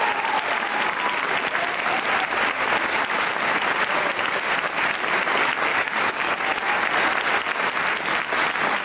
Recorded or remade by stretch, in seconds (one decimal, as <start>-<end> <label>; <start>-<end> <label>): 0.0-5.7 recorded; 5.7-6.3 remade; 6.3-8.8 recorded